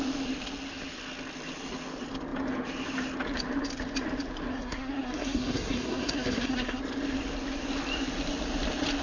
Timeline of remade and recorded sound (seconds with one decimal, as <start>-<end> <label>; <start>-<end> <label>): 0.0-4.5 recorded; 4.5-6.8 remade; 6.8-9.0 recorded